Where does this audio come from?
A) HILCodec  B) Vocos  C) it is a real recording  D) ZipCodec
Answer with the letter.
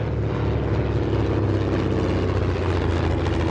C